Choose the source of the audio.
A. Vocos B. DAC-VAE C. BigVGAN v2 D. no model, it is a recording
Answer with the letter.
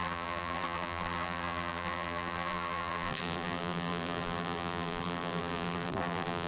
C